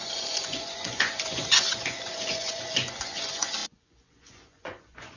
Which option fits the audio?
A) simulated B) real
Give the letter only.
A